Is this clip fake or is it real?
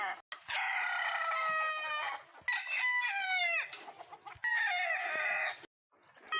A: real